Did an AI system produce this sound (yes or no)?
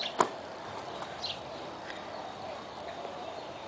no